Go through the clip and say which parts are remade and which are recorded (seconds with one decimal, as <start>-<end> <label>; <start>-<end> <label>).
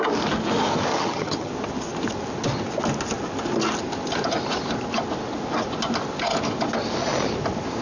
0.0-0.9 recorded; 0.9-1.5 remade; 1.5-7.8 recorded